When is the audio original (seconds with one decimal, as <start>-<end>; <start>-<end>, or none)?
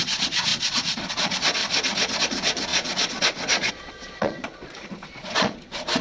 1.6-2.2